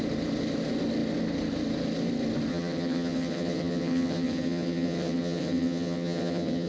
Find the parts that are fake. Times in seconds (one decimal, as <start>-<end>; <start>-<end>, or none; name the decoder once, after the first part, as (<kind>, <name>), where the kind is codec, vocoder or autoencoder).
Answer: 2.5-6.7 (vocoder, HiFi-GAN)